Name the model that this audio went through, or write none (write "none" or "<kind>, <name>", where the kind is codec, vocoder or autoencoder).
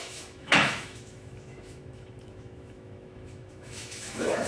autoencoder, DAC-VAE